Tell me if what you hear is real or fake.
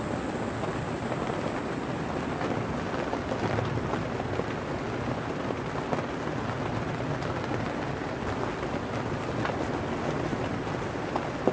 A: real